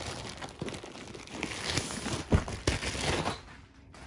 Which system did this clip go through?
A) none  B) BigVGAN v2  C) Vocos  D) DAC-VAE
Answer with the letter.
A